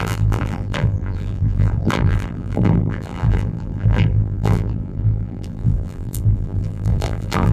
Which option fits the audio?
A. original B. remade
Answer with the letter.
B